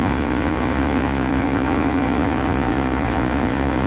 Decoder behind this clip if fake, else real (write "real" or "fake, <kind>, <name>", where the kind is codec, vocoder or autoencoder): fake, vocoder, Vocos